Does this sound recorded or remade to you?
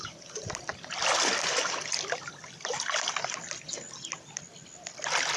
recorded